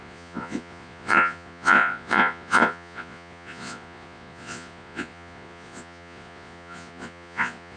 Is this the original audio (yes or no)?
no